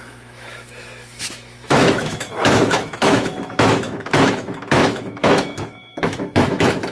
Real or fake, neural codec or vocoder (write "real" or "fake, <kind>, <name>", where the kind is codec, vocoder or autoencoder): fake, autoencoder, DAC-VAE